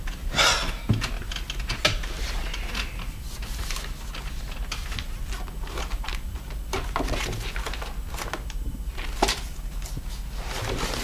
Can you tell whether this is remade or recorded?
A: recorded